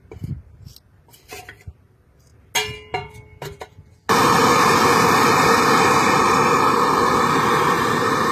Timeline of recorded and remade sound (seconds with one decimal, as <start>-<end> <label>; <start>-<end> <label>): 0.0-8.3 recorded